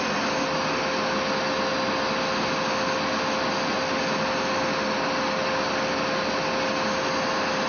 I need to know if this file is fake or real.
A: real